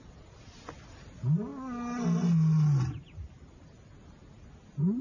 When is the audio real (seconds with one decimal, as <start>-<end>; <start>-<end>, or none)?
0.0-5.0